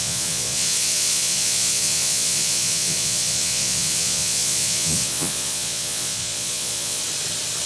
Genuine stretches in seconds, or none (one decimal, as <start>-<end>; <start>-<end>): 7.0-7.7